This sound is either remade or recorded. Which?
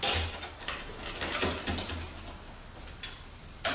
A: recorded